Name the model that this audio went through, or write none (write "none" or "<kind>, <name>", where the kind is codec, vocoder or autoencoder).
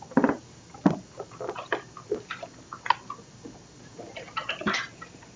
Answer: none